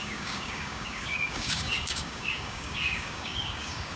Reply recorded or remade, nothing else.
remade